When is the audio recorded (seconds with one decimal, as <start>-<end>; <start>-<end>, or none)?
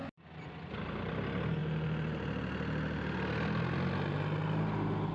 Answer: 0.0-5.1